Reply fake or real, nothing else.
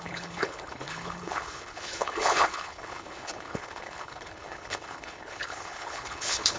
fake